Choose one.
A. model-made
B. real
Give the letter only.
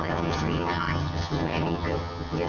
A